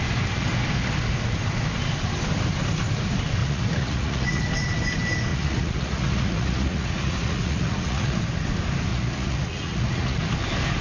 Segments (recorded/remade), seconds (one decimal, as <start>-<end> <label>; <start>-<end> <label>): 0.0-3.4 recorded; 3.4-4.4 remade; 4.4-5.3 recorded; 5.3-8.2 remade; 8.2-8.9 recorded; 8.9-10.2 remade; 10.2-10.8 recorded